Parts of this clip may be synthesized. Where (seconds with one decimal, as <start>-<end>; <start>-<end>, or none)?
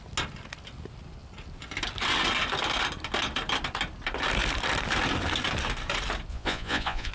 6.3-7.1